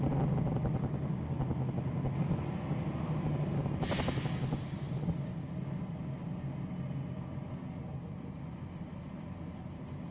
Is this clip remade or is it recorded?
recorded